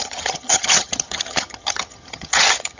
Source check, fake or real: fake